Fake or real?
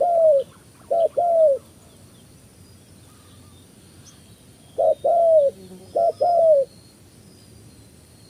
real